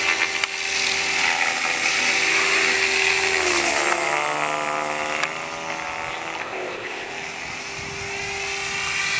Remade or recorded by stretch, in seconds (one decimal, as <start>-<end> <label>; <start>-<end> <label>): 0.0-6.4 recorded; 6.4-7.1 remade; 7.1-9.2 recorded